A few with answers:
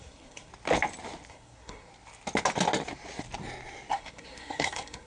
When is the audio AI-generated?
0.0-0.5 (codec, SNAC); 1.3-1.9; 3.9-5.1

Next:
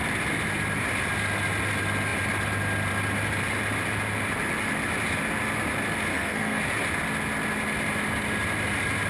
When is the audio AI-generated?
6.1-6.6 (codec, SNAC)

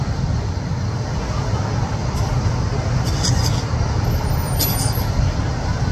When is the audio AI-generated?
none

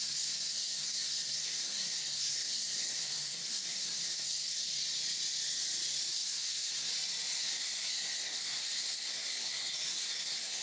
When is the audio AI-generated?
0.0-4.7 (codec, SNAC); 6.1-6.9; 7.4-10.6